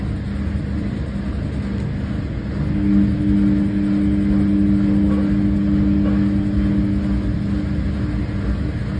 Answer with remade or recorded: recorded